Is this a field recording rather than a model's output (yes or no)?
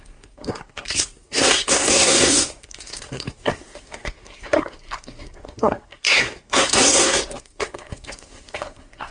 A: no